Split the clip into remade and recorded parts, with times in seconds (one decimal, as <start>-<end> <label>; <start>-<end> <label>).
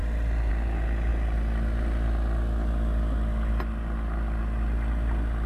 0.0-5.5 recorded